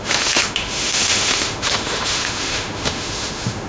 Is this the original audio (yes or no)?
no